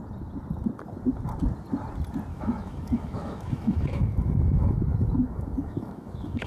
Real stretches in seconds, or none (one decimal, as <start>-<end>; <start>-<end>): 0.0-2.3